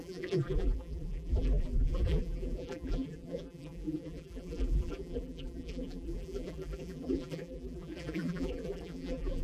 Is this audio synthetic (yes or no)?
yes